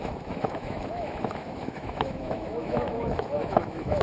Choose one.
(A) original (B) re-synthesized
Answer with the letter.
B